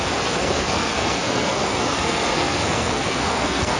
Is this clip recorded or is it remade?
remade